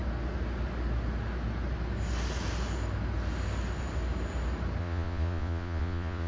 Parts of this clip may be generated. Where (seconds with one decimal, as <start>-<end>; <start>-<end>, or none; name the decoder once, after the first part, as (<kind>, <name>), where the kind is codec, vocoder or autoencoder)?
4.8-6.3 (vocoder, Vocos)